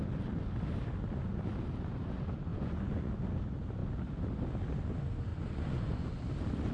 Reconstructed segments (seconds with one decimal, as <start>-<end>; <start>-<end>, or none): 2.5-3.1; 5.3-6.1